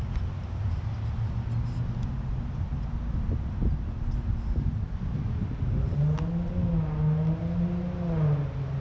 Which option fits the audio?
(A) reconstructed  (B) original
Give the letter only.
B